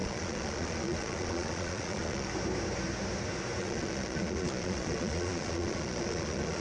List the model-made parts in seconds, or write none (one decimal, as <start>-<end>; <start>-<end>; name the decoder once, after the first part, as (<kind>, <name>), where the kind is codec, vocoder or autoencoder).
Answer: 0.0-2.3 (vocoder, Vocos); 3.6-6.6